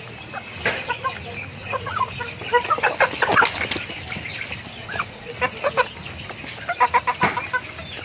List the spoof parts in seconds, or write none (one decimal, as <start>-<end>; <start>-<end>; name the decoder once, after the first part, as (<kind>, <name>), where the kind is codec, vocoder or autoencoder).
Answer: 1.6-2.2 (vocoder, Vocos); 4.8-5.3